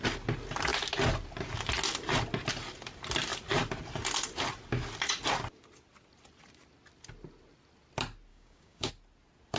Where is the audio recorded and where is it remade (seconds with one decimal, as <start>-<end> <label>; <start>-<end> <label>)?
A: 0.0-8.3 recorded; 8.3-8.9 remade; 8.9-9.6 recorded